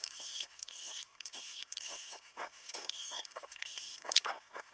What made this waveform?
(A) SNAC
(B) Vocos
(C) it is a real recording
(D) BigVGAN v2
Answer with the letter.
A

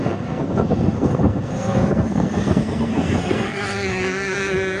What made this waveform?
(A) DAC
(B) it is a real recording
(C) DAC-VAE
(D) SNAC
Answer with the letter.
D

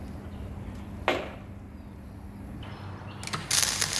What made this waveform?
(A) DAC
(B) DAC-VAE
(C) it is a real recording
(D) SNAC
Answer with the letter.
C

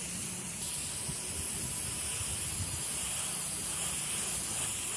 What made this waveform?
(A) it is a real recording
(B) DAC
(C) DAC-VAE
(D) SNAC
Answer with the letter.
A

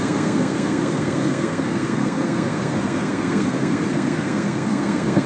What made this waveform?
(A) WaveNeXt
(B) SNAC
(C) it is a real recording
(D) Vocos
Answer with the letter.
B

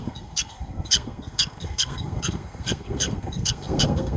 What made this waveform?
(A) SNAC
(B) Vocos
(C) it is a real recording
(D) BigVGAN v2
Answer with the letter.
A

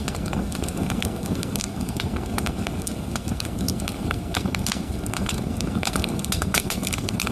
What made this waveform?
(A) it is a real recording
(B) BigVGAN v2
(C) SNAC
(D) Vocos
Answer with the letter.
C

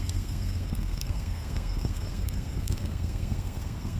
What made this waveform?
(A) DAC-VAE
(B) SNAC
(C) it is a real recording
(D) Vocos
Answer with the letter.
B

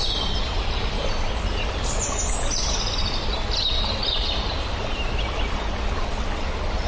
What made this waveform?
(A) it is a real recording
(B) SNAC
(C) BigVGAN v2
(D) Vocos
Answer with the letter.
A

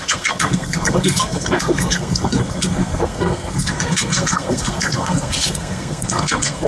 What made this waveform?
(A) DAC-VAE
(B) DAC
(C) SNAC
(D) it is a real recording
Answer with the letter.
C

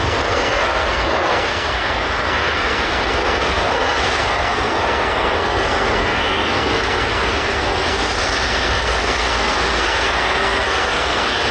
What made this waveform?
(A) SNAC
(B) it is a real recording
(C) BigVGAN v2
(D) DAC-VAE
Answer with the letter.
A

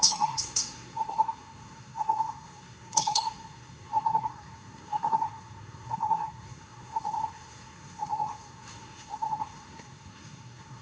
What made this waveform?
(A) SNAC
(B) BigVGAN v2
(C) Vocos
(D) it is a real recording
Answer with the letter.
A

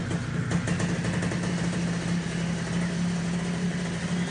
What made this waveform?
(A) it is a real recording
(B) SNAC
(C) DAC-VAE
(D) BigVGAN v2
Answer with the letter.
A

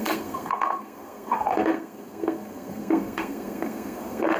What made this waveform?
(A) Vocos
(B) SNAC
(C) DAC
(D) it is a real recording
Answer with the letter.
B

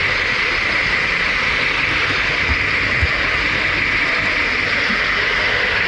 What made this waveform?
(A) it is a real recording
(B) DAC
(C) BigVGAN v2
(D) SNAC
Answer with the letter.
A